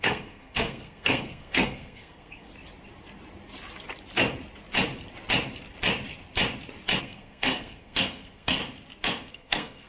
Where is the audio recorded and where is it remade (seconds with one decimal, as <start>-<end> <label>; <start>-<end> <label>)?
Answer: 0.0-2.5 remade; 2.5-7.0 recorded; 7.0-8.6 remade; 8.6-9.3 recorded; 9.3-9.9 remade